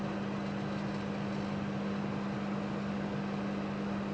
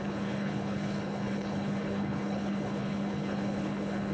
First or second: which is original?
first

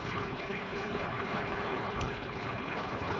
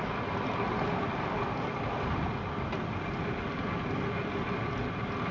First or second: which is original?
second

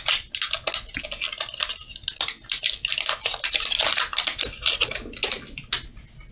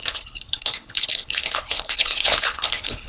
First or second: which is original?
first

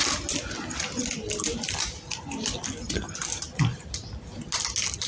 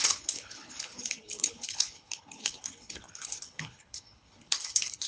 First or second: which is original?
first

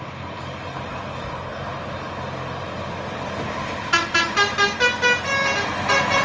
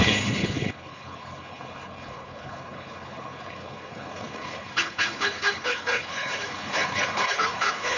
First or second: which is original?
first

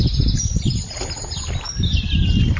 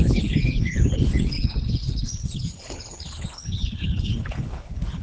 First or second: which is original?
first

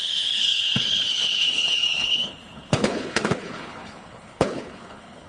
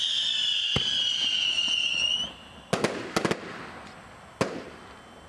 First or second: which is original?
second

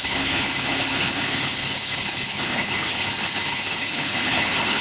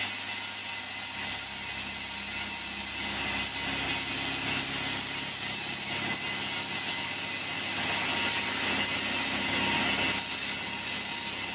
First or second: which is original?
second